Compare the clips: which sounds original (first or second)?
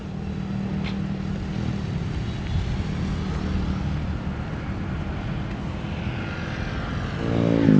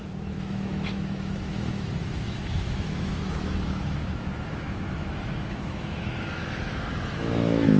first